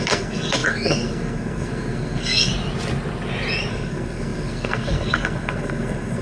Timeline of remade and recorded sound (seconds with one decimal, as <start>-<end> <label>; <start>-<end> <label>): 0.0-2.5 remade; 2.5-3.7 recorded; 3.7-6.2 remade